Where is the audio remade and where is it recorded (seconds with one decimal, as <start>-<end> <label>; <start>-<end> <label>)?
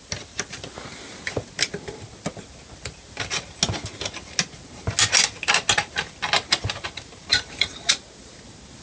0.0-7.3 recorded; 7.3-7.9 remade; 7.9-8.8 recorded